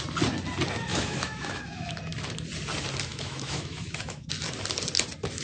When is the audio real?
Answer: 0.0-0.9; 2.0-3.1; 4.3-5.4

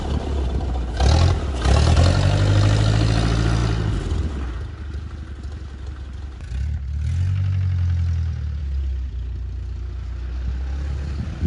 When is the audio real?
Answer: 0.0-11.5

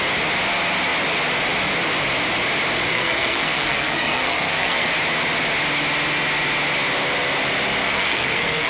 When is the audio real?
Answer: 0.0-2.9; 4.9-7.8

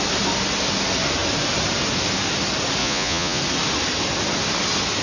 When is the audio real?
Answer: 0.0-2.8; 3.4-5.0